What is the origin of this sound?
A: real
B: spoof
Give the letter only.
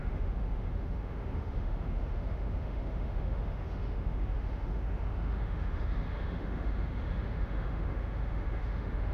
B